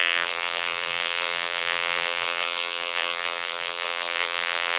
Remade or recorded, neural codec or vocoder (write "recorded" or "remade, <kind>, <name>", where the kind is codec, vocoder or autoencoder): remade, vocoder, BigVGAN v2